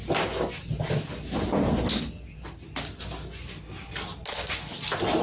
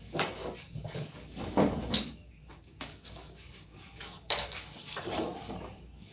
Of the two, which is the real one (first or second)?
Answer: first